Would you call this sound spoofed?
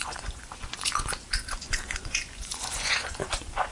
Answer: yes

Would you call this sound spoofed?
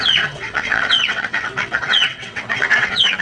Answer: yes